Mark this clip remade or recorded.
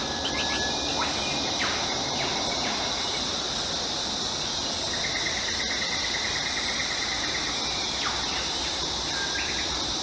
recorded